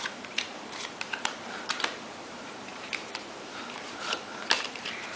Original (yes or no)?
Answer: no